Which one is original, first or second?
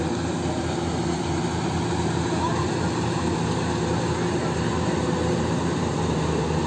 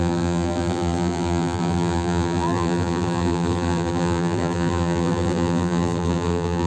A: first